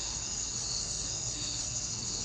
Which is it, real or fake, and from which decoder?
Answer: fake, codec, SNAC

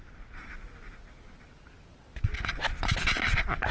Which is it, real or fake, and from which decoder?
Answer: real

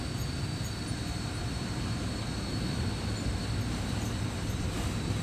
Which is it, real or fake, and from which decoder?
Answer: fake, vocoder, BigVGAN v2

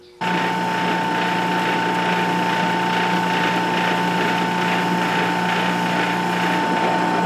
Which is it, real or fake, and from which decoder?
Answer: real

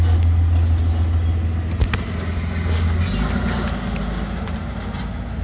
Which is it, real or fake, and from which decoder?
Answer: real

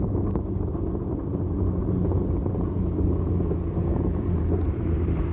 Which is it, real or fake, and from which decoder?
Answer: real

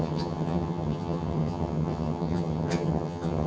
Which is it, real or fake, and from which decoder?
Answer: fake, vocoder, HiFi-GAN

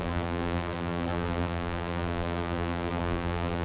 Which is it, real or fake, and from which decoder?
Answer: fake, vocoder, BigVGAN v2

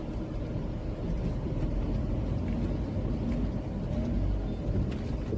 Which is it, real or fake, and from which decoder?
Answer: real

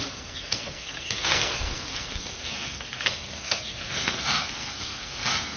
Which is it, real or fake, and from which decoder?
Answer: fake, codec, SNAC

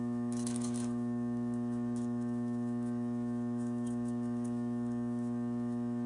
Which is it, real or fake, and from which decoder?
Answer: fake, autoencoder, DAC-VAE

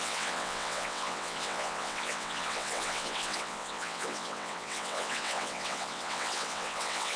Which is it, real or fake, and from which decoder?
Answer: fake, vocoder, WaveNeXt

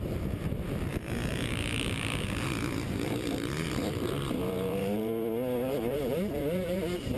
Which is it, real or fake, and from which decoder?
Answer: fake, vocoder, BigVGAN v2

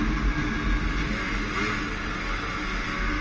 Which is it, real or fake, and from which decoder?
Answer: real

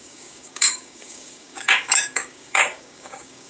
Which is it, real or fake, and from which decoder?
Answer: fake, codec, DAC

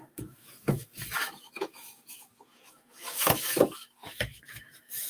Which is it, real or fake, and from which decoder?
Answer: fake, autoencoder, DAC-VAE